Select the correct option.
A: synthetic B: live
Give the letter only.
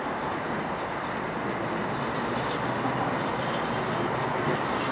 B